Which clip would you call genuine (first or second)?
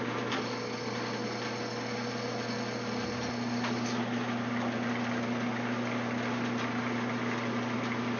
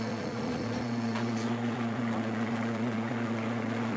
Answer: first